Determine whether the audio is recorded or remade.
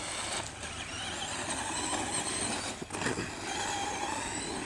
recorded